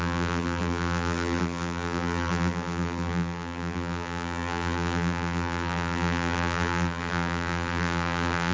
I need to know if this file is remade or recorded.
remade